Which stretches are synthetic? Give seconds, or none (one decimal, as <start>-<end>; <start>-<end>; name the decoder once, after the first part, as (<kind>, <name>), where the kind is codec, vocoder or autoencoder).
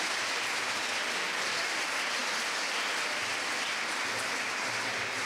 none